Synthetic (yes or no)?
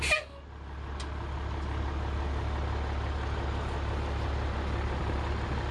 no